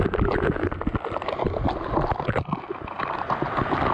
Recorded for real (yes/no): yes